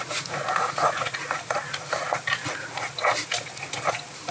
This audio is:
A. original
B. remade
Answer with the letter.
A